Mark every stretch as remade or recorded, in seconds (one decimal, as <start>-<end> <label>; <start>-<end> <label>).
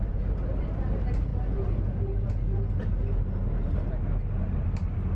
0.0-5.2 recorded